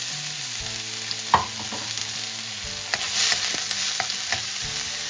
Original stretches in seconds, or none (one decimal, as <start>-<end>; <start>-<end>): 0.0-5.1